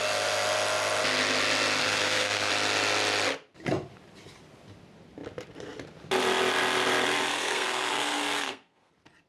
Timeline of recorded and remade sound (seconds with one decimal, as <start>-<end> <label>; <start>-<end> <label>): 0.0-1.8 recorded; 1.8-2.5 remade; 2.5-7.3 recorded; 7.3-8.9 remade; 8.9-9.3 recorded